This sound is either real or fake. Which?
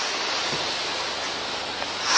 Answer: real